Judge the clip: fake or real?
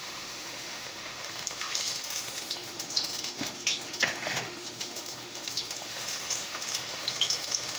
fake